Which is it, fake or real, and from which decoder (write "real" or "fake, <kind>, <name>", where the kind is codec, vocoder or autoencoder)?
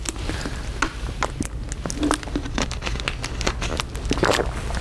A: real